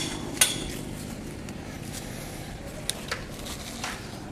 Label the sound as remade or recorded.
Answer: recorded